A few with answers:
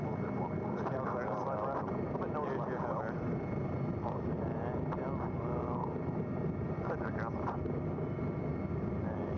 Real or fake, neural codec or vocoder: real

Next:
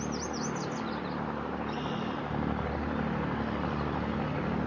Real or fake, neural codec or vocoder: real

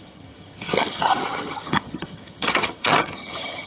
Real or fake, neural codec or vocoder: fake, vocoder, HiFi-GAN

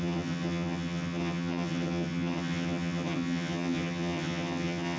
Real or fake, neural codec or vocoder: fake, vocoder, HiFi-GAN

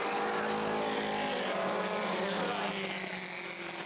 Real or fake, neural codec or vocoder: real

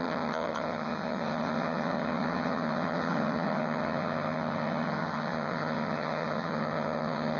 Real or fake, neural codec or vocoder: fake, vocoder, HiFi-GAN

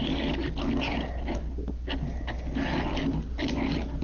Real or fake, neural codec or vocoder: real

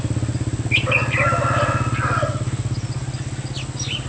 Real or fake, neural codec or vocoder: real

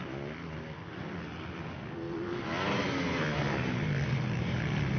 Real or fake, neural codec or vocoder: real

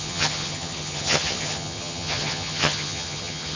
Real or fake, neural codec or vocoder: fake, vocoder, HiFi-GAN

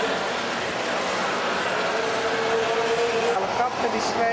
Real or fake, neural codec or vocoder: real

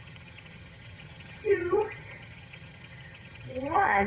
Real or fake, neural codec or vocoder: fake, vocoder, HiFi-GAN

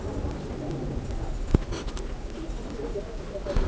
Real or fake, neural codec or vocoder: real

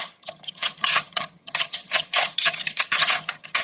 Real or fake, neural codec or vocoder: fake, vocoder, HiFi-GAN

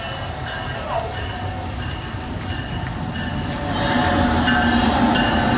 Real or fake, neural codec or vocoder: real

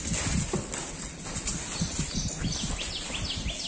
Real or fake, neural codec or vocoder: real